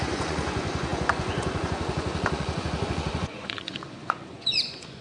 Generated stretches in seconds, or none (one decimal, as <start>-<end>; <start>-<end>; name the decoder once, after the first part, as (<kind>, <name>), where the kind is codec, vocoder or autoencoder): 0.0-5.0 (vocoder, Vocos)